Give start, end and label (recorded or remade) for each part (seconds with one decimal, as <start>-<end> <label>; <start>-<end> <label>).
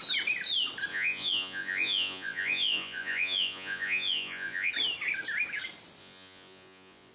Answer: 0.0-0.9 recorded; 0.9-4.7 remade; 4.7-6.0 recorded; 6.0-7.1 remade